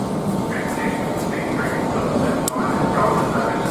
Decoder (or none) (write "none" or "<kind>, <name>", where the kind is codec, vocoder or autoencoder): none